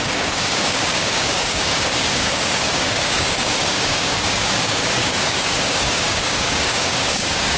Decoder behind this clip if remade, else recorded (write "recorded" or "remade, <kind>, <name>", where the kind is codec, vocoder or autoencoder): remade, codec, DAC